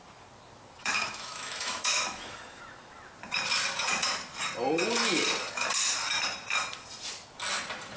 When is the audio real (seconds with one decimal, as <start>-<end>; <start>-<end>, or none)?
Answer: 0.0-0.8; 2.6-8.0